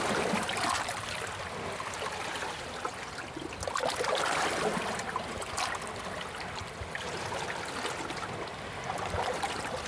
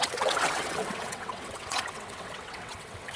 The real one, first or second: first